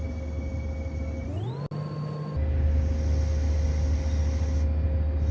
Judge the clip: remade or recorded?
recorded